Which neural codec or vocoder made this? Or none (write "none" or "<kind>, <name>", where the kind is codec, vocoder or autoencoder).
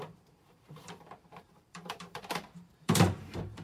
vocoder, BigVGAN v2